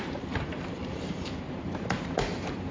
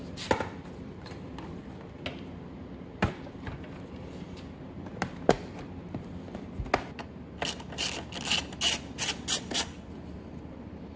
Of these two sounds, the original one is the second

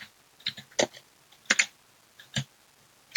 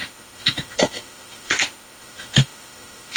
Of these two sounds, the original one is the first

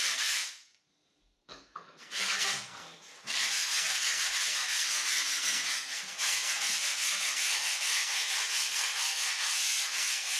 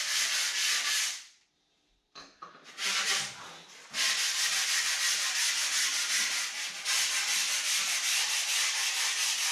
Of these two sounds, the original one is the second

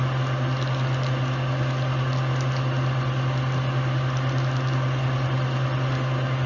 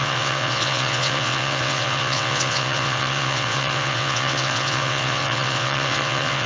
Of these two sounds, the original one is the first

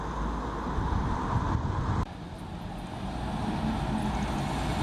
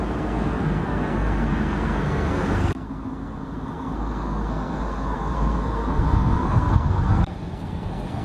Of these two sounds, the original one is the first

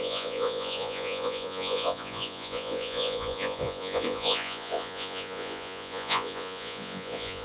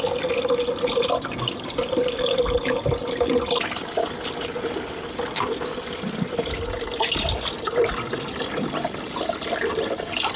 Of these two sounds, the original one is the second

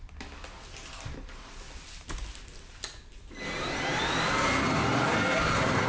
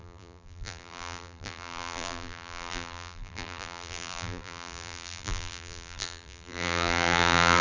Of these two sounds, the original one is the first